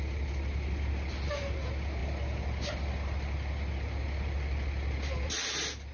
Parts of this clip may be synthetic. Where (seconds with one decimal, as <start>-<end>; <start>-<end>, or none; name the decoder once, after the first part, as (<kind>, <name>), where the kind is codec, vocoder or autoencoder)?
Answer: none